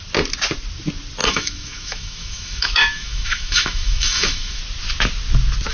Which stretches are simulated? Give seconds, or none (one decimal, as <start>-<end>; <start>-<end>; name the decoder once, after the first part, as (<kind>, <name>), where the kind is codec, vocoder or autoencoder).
1.2-4.6 (autoencoder, DAC-VAE)

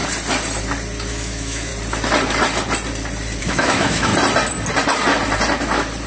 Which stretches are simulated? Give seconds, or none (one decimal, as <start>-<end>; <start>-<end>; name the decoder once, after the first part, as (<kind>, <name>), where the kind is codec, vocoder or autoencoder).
1.1-1.7 (autoencoder, DAC-VAE); 3.4-4.1